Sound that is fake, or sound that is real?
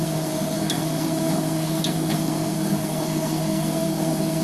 fake